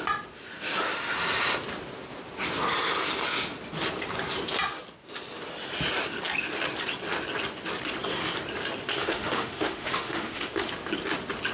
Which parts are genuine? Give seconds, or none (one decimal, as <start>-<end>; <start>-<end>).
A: 0.0-8.9; 10.7-11.5